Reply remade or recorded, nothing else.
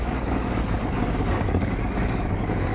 remade